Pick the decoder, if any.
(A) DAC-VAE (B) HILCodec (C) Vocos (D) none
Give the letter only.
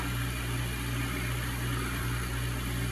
D